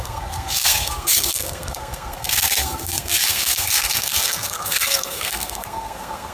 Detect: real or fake fake